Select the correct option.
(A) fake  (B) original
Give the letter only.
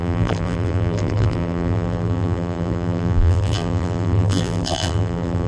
A